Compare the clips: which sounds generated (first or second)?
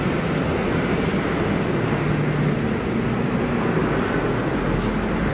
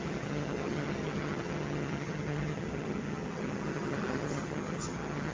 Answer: second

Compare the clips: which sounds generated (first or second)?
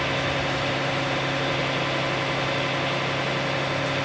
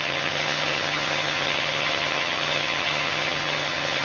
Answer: second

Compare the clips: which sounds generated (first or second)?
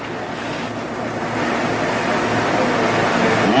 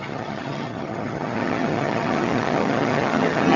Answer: second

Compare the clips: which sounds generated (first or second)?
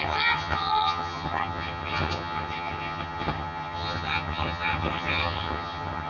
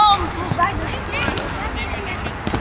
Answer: first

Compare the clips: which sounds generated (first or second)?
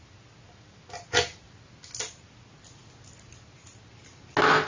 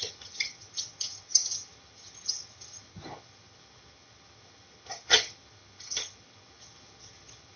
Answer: second